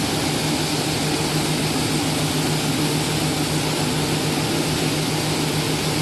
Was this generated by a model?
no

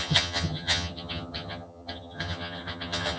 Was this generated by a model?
yes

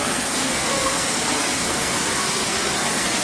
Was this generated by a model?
yes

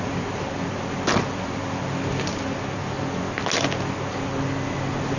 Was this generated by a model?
no